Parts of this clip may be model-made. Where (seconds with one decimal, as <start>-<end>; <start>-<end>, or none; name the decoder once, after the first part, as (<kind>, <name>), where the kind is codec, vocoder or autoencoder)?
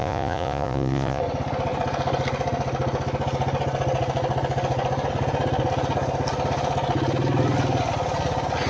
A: 0.0-1.2 (vocoder, Vocos)